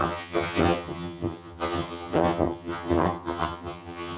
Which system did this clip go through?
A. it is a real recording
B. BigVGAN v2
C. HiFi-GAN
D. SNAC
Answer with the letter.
C